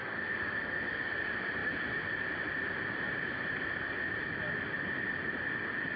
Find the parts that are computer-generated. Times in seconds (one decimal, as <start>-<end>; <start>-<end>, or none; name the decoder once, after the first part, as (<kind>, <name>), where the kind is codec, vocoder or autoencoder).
0.0-1.0 (codec, SNAC)